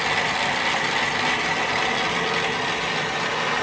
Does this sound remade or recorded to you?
recorded